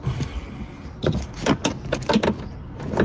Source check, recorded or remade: recorded